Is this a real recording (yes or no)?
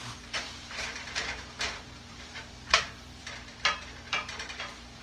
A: no